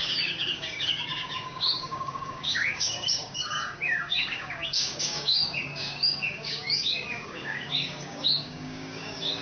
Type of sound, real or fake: fake